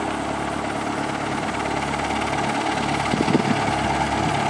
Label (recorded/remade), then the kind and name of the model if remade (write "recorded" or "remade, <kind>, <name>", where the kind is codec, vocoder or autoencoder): recorded